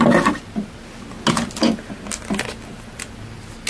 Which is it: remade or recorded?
recorded